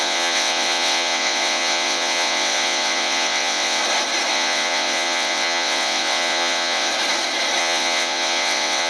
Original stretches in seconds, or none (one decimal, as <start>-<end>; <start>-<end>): 3.8-4.3; 6.9-7.6